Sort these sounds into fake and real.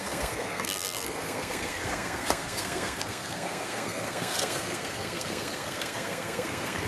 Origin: fake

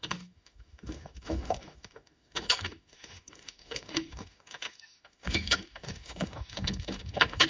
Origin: fake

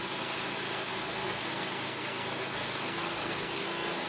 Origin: fake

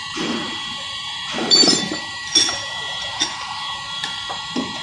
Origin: fake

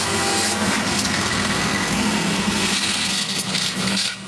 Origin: fake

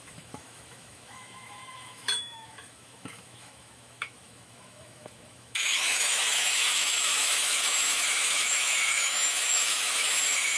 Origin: fake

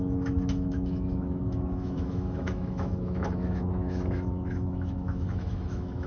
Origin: fake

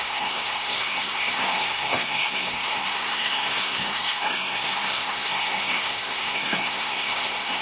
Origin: fake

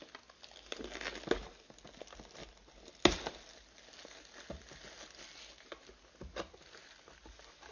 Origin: real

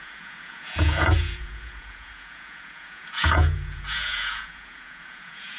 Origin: fake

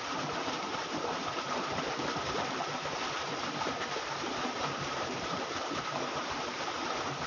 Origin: fake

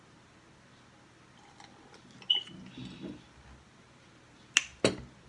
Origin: real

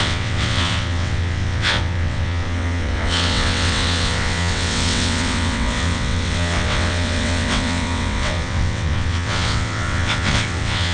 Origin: fake